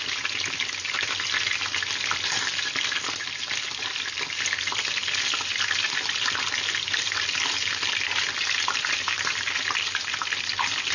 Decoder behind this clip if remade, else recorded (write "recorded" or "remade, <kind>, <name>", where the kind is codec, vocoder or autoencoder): recorded